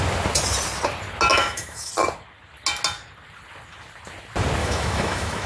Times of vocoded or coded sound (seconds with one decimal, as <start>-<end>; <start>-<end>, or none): 1.3-1.9; 4.6-5.5